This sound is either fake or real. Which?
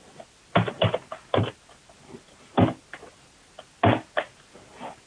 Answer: real